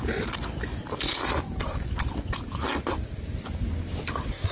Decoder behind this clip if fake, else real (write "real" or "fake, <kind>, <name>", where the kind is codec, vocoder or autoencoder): real